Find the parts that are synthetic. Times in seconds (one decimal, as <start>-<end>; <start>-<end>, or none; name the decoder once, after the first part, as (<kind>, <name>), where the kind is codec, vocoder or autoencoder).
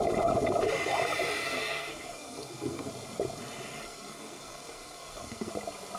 1.4-2.9 (codec, SNAC); 3.7-5.5